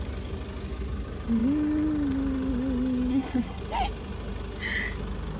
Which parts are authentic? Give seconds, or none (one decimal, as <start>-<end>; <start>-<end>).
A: 0.0-3.1; 3.6-5.4